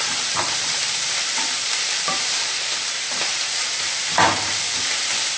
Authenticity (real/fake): fake